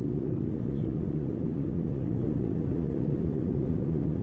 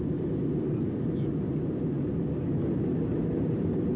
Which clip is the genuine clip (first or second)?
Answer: second